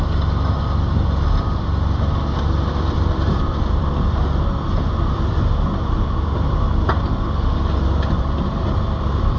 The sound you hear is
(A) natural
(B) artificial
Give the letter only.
B